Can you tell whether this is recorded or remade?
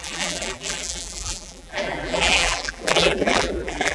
remade